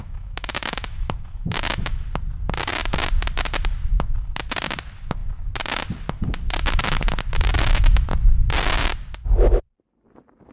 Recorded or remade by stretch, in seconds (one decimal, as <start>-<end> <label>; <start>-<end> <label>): 0.0-2.0 remade; 2.0-10.5 recorded